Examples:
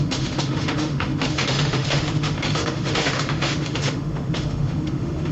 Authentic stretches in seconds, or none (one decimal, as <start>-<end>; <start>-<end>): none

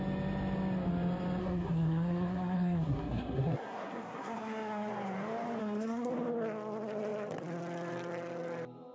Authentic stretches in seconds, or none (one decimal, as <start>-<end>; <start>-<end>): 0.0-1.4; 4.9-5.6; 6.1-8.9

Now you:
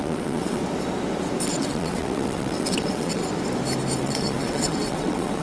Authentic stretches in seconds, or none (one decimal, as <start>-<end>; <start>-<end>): 0.6-1.5; 3.2-4.0